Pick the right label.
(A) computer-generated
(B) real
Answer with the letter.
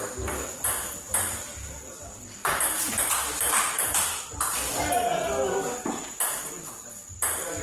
B